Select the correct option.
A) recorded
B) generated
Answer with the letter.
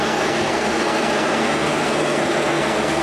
B